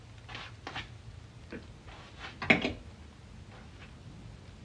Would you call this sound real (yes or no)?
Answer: yes